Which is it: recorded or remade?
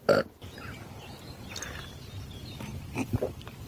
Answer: recorded